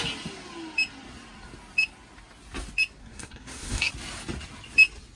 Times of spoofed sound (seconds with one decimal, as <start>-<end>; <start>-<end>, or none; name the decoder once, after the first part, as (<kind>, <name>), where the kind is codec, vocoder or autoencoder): 3.0-3.9 (codec, SNAC)